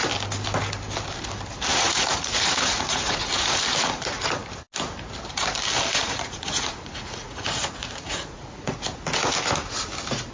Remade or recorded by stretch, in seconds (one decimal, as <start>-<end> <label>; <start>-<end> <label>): 0.0-1.7 recorded; 1.7-3.6 remade; 3.6-6.0 recorded; 6.0-8.7 remade; 8.7-10.3 recorded